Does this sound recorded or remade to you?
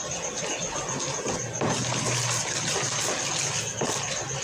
recorded